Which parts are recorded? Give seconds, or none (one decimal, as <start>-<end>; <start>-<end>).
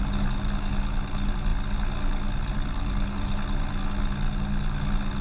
0.0-5.2